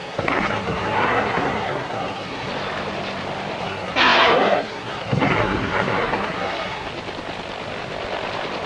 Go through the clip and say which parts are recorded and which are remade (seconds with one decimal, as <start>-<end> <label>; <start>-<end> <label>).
0.0-2.5 remade; 2.5-3.6 recorded; 3.6-6.9 remade; 6.9-8.7 recorded